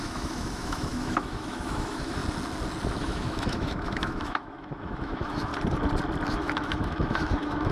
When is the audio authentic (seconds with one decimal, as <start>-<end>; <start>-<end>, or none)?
2.2-3.0; 5.5-6.3